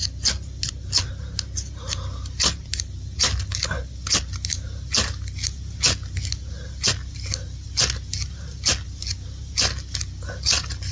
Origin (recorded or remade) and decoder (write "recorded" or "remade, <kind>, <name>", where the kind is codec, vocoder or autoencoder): recorded